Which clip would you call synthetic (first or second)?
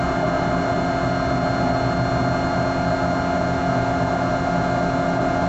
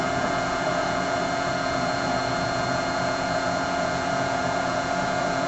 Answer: second